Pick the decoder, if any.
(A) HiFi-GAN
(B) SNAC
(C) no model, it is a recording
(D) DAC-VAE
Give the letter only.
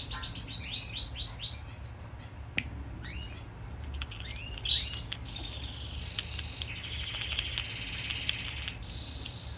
C